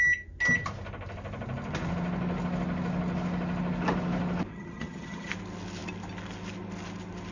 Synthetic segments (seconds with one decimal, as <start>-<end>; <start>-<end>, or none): 4.5-5.3